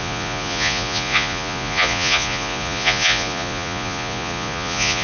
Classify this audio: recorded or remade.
remade